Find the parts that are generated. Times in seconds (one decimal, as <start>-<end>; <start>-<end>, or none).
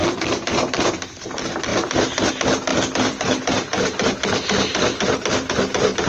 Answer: 0.0-0.9; 1.7-2.3; 2.7-4.1